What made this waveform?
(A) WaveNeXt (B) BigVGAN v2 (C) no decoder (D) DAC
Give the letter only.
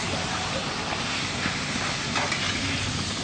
C